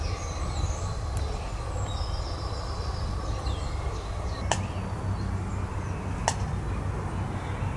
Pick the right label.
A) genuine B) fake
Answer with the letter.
A